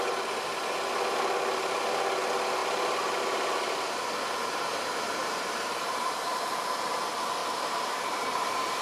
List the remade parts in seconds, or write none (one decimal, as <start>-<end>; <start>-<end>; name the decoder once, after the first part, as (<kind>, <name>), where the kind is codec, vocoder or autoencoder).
4.4-6.7 (vocoder, BigVGAN v2); 7.4-8.8